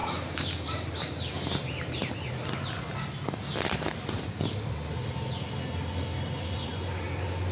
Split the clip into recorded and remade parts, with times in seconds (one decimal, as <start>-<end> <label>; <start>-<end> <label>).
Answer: 0.0-2.1 remade; 2.1-3.9 recorded; 3.9-4.5 remade; 4.5-7.5 recorded